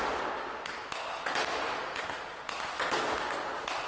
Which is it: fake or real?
real